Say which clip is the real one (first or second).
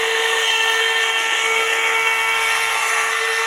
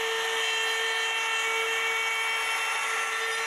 second